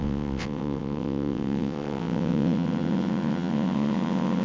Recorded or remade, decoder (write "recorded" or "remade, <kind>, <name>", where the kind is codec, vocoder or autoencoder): remade, vocoder, WaveNeXt